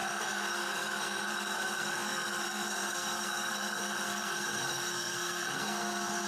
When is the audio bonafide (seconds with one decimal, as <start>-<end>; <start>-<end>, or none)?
none